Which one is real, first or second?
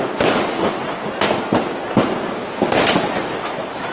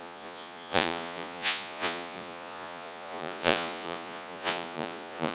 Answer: first